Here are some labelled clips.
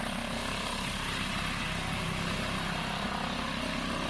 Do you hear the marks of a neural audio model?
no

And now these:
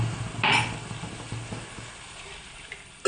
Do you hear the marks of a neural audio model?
no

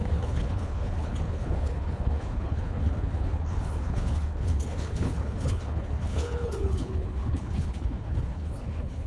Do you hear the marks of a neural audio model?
yes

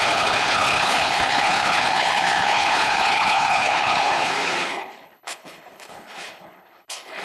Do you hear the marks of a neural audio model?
yes